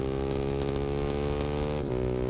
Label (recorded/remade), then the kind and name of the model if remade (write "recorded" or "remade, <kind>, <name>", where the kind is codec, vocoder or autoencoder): recorded